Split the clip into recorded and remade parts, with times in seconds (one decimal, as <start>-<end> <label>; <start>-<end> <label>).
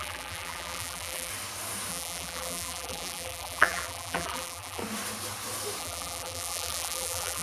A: 0.0-1.3 remade; 1.3-1.9 recorded; 1.9-4.8 remade; 4.8-5.8 recorded; 5.8-7.4 remade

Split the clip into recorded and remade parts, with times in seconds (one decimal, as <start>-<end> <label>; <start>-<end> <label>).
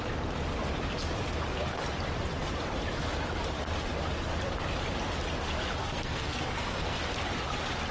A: 0.0-5.8 recorded; 5.8-7.0 remade; 7.0-7.9 recorded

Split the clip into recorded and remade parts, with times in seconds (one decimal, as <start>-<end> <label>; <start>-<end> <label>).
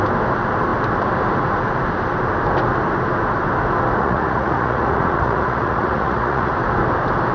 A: 0.0-4.0 recorded; 4.0-6.5 remade; 6.5-7.3 recorded